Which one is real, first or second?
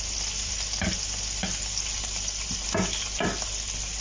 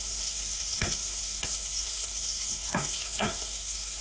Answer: first